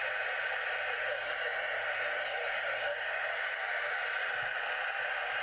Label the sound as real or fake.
real